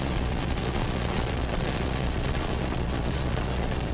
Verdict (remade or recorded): remade